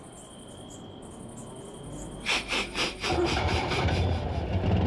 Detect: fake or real real